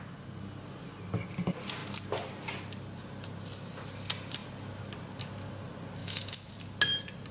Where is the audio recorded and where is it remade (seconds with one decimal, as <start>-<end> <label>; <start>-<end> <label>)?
0.0-6.0 recorded; 6.0-6.5 remade; 6.5-7.3 recorded